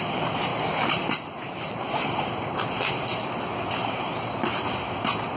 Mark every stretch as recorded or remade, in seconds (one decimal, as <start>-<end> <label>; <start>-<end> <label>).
0.0-5.4 recorded